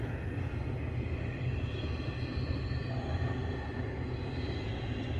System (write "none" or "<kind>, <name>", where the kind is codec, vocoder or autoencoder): none